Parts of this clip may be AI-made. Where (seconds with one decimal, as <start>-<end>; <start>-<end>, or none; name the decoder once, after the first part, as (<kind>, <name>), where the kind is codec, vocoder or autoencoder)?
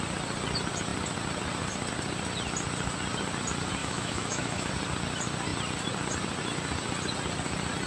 3.8-4.7 (autoencoder, DAC-VAE)